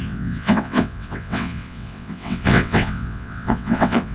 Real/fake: fake